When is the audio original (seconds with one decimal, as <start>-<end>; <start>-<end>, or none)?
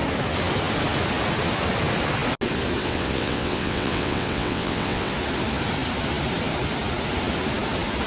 0.0-2.8; 5.1-8.1